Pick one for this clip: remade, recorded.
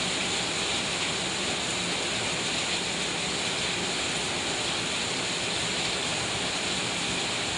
recorded